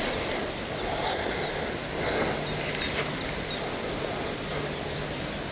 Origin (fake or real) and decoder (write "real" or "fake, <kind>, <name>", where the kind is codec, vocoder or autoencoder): real